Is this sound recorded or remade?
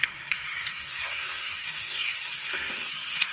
remade